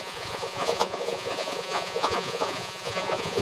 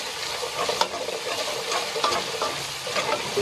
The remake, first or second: first